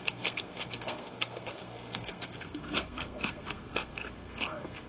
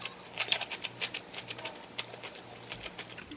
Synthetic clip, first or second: first